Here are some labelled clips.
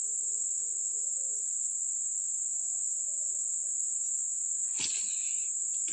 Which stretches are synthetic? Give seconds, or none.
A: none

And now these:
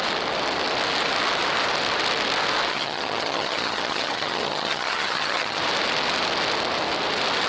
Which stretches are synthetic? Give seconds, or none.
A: 2.7-5.6 (vocoder, HiFi-GAN)

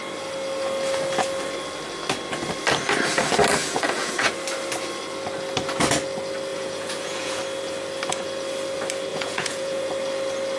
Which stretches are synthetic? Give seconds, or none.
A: 3.6-4.3 (vocoder, Vocos); 6.5-7.4; 9.1-9.9

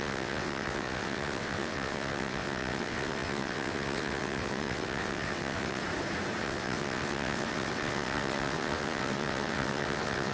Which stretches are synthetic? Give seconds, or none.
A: 0.0-5.8 (vocoder, WaveNeXt); 6.4-10.3

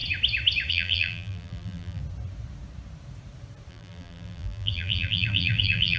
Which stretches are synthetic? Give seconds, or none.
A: 0.7-2.0 (vocoder, BigVGAN v2); 3.7-6.0

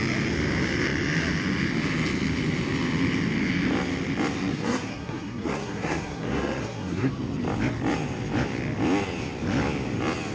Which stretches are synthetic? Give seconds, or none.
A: 4.5-7.1 (codec, SNAC)

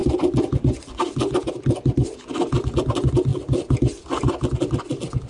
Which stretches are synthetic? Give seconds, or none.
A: none